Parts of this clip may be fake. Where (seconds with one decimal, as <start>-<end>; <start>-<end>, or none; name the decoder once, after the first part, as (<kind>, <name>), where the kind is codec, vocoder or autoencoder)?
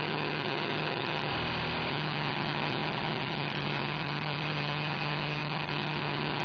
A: 0.0-1.3 (vocoder, HiFi-GAN); 1.9-6.4